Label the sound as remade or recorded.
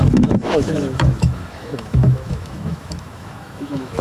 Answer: remade